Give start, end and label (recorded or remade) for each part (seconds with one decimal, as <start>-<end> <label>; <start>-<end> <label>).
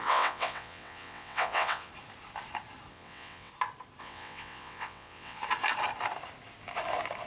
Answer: 0.0-1.9 remade; 1.9-2.9 recorded; 2.9-3.5 remade; 3.5-4.0 recorded; 4.0-5.4 remade; 5.4-7.3 recorded